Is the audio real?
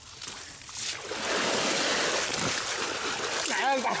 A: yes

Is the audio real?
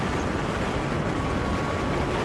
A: yes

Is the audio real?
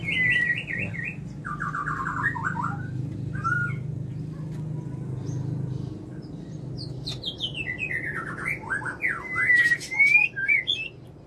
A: yes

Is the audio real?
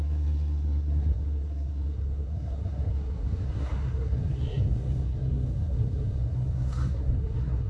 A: no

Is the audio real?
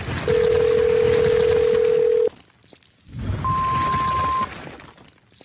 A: yes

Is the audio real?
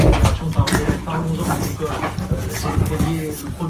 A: yes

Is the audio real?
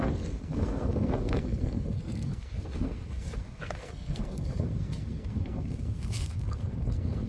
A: no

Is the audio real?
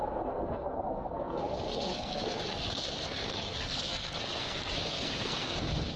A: no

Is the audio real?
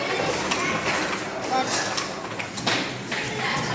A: yes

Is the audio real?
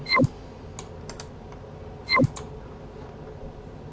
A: yes